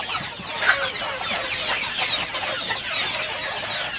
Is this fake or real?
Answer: real